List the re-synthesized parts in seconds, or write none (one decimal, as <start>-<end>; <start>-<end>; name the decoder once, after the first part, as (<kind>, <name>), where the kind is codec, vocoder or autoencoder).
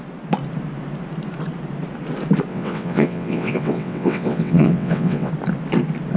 2.5-5.3 (vocoder, WaveNeXt)